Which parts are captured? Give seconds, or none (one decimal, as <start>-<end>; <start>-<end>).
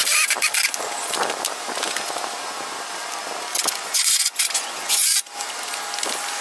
0.0-3.8; 5.0-6.4